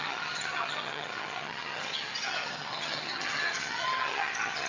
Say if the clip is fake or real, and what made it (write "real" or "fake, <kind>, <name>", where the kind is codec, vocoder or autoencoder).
fake, vocoder, HiFi-GAN